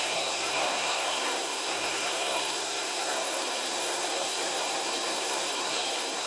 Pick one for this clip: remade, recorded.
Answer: remade